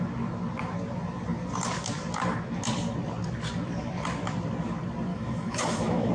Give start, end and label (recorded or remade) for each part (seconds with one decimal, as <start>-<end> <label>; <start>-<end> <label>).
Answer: 0.0-5.1 recorded; 5.1-6.1 remade